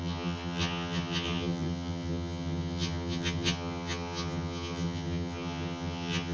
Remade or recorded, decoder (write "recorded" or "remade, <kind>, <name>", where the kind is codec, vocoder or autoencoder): remade, vocoder, HiFi-GAN